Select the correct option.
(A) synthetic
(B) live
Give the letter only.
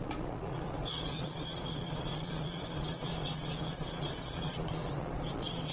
A